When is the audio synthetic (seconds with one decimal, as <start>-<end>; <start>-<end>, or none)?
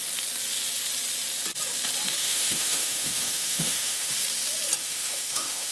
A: 2.2-4.1; 4.8-5.7